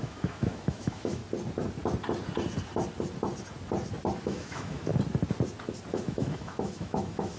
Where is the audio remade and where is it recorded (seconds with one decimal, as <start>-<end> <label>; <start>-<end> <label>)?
0.0-1.2 remade; 1.2-4.2 recorded; 4.2-4.9 remade; 4.9-5.9 recorded; 5.9-7.4 remade